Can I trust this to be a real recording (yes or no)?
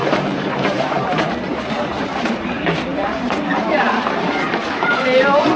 no